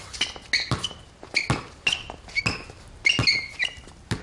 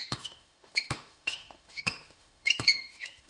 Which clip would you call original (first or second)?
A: first